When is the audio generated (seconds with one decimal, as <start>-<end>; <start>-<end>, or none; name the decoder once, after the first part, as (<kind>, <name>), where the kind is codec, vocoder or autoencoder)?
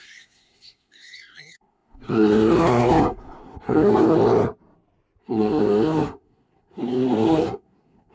0.0-4.2 (codec, SNAC); 5.2-8.1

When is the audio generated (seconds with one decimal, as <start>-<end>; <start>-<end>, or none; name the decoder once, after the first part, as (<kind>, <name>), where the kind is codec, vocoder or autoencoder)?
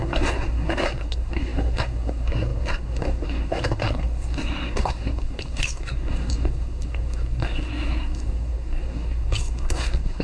0.0-10.2 (codec, SNAC)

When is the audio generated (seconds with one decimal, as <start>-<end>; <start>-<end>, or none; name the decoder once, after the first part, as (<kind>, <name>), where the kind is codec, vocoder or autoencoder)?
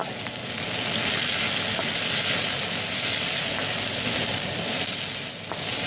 none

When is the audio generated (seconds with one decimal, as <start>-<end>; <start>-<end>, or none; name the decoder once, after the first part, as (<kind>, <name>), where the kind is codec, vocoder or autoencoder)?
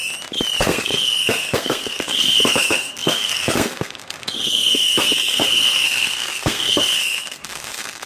0.6-8.1 (codec, SNAC)